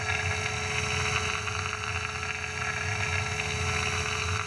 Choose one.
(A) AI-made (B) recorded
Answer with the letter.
B